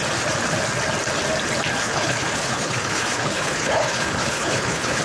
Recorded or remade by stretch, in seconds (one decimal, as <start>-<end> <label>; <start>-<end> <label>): 0.0-1.8 recorded; 1.8-5.0 remade